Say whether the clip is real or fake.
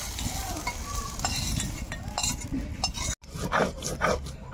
real